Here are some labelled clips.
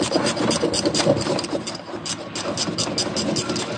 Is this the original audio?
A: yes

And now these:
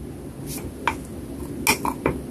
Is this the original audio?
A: yes